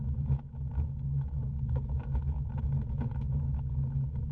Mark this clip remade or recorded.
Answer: remade